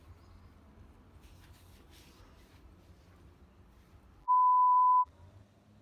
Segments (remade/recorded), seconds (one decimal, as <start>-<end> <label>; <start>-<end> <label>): 0.0-4.2 recorded; 4.2-5.1 remade; 5.1-5.8 recorded